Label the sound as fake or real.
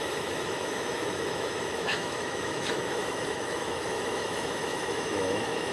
fake